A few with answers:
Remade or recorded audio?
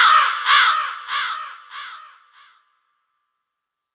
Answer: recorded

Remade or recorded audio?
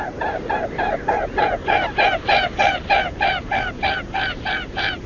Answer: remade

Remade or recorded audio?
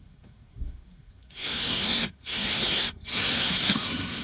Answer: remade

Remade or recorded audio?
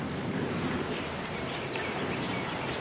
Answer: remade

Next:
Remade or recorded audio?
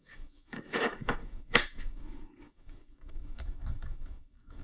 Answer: remade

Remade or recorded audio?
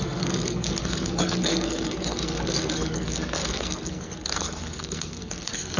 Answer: remade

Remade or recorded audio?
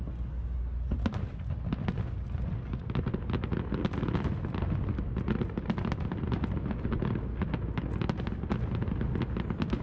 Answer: recorded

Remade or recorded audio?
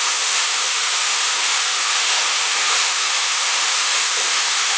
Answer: remade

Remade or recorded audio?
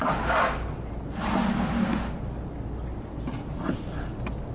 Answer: recorded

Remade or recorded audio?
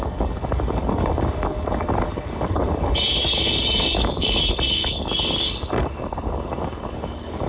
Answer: remade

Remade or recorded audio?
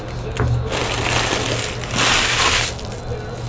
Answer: recorded